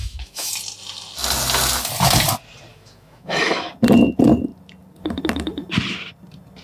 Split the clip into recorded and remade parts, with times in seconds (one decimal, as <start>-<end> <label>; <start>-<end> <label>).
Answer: 0.0-0.5 remade; 0.5-2.7 recorded; 2.7-3.7 remade; 3.7-6.6 recorded